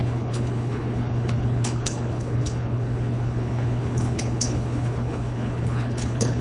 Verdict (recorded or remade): remade